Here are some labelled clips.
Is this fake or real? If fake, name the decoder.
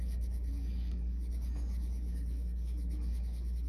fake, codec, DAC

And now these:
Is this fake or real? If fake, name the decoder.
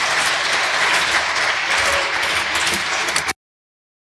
real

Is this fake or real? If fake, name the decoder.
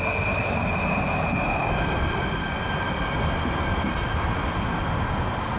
real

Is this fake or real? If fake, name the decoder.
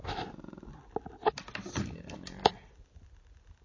real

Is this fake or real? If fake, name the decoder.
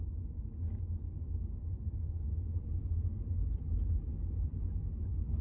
real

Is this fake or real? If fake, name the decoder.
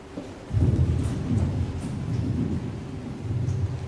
real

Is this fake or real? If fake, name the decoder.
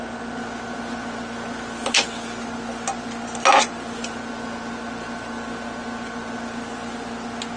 real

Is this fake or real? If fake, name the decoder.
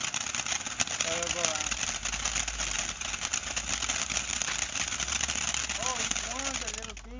real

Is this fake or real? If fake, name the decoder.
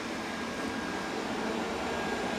real